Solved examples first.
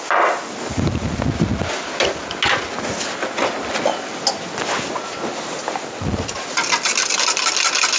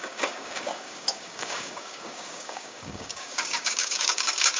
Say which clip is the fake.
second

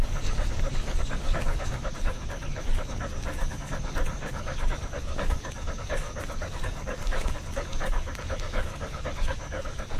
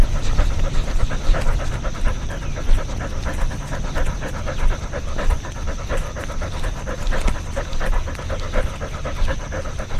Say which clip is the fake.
first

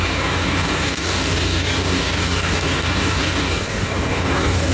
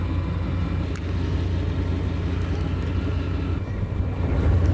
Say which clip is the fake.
first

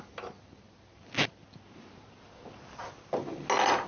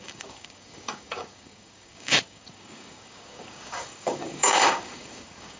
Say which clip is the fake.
second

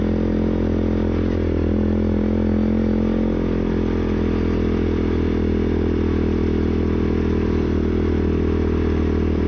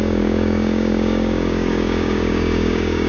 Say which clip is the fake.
second